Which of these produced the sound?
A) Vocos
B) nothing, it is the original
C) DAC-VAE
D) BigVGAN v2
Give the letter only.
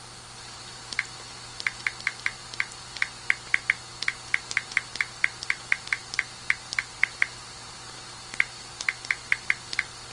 B